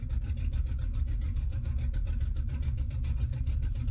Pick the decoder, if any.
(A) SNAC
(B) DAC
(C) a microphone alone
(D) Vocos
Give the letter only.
C